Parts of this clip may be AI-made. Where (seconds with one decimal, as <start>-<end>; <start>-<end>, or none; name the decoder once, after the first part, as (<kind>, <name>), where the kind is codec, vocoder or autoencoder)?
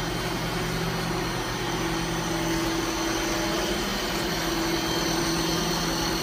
none